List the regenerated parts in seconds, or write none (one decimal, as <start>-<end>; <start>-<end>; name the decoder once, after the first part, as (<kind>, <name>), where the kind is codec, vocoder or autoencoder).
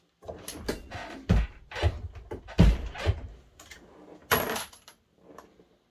none